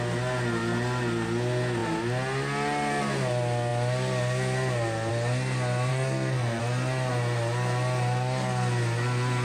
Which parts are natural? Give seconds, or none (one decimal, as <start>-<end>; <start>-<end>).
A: 0.0-5.9; 6.6-9.4